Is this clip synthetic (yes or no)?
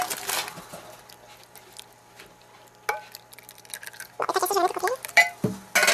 no